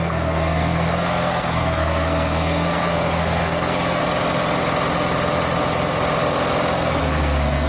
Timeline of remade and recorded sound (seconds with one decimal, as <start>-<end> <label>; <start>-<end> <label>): 0.0-4.0 remade; 4.0-7.0 recorded; 7.0-7.7 remade